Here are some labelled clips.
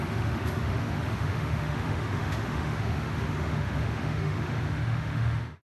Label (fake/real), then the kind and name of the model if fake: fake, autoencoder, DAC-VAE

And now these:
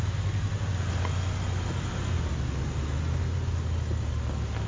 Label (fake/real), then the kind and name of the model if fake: real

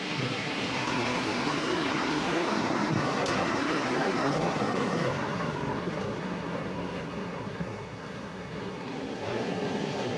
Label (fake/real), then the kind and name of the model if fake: fake, codec, SNAC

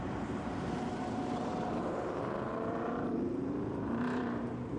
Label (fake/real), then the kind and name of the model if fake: fake, vocoder, BigVGAN v2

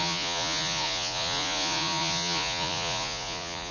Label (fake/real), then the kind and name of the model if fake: fake, vocoder, Vocos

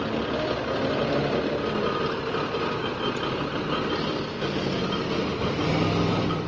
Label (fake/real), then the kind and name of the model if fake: real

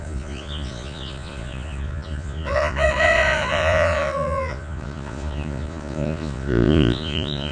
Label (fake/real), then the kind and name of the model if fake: fake, vocoder, Vocos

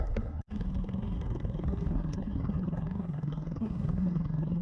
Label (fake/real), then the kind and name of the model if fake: fake, codec, SNAC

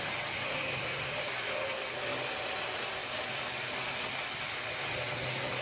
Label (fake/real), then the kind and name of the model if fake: real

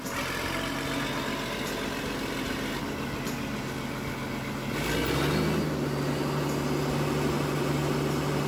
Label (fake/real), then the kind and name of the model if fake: real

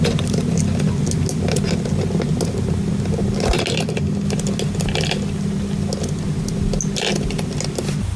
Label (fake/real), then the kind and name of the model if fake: real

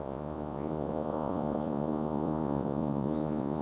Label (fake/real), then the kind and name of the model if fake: fake, vocoder, Vocos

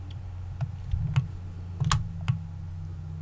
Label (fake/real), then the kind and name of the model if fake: real